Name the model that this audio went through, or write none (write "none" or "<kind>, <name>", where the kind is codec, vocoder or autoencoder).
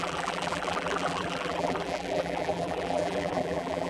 vocoder, BigVGAN v2